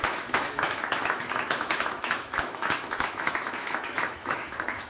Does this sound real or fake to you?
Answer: fake